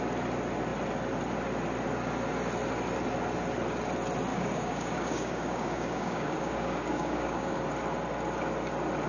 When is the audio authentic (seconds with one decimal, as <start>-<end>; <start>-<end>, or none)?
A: 0.0-4.3; 7.6-9.1